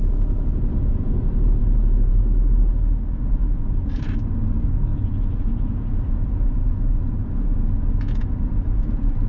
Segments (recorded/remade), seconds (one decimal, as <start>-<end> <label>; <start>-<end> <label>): 0.0-1.6 recorded; 1.6-2.2 remade; 2.2-3.4 recorded; 3.4-4.0 remade; 4.0-4.9 recorded; 4.9-9.3 remade